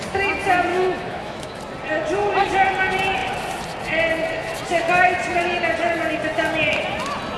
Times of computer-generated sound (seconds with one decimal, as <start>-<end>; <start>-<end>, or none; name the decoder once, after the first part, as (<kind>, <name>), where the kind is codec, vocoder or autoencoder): 0.7-1.6 (autoencoder, DAC-VAE)